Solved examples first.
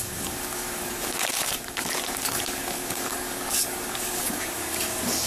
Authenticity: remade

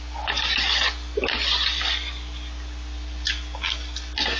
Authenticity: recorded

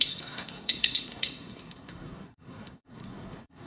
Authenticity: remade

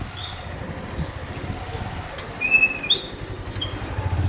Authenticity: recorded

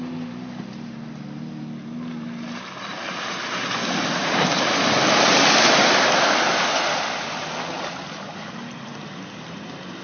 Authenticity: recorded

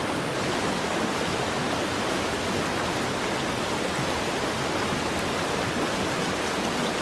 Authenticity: recorded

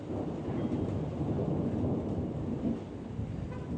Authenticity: recorded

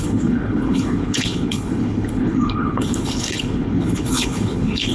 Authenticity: remade